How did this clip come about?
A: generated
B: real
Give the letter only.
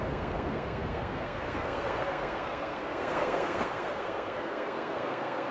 A